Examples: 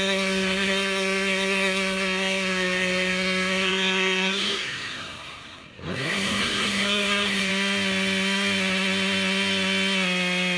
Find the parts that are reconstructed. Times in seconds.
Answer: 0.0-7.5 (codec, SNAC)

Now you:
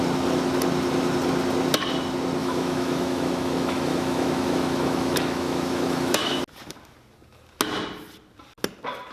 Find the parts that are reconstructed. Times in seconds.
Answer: 2.4-6.4 (autoencoder, DAC-VAE)

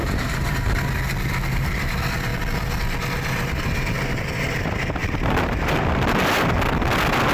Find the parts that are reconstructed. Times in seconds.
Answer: 0.0-0.8 (vocoder, BigVGAN v2); 5.0-6.1